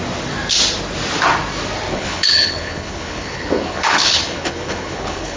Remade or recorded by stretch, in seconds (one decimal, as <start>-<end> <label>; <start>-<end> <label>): 0.0-1.9 recorded; 1.9-5.4 remade